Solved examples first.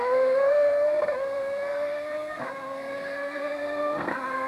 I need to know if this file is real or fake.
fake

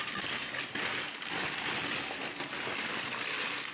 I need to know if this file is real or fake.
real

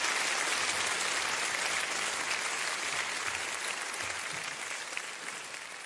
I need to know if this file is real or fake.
real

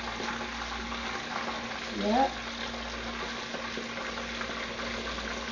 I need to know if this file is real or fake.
real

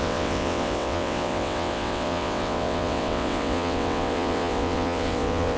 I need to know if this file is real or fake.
fake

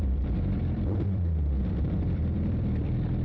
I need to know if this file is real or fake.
fake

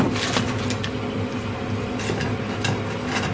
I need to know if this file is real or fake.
real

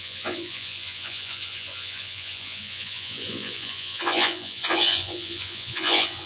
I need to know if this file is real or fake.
fake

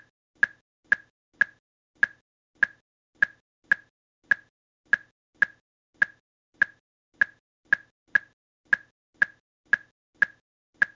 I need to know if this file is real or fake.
real